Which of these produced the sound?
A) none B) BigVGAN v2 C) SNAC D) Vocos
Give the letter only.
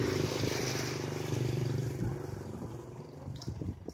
B